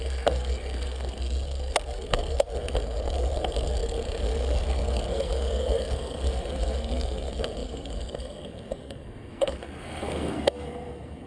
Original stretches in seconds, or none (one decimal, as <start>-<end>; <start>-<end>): none

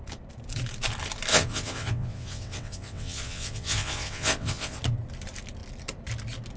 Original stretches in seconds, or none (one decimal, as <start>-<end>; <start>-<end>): 0.0-1.3; 4.8-6.6

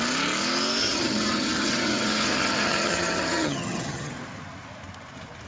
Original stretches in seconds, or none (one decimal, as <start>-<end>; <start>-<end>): 0.0-0.8; 4.1-5.5

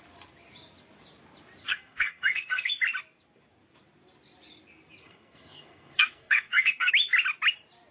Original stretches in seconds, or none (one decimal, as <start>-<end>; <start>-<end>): 0.0-1.6; 2.7-5.0; 6.9-7.9